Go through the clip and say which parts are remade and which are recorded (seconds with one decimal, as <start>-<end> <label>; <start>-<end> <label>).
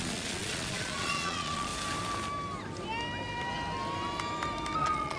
0.0-1.7 remade; 1.7-4.8 recorded; 4.8-5.2 remade